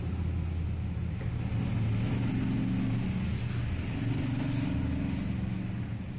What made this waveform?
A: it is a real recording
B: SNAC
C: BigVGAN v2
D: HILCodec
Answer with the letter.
A